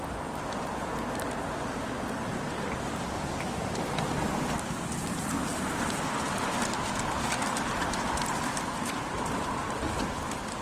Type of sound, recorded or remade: recorded